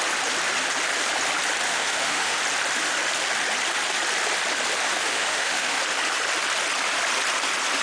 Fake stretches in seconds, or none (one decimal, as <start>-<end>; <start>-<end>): 1.7-2.4; 5.0-5.8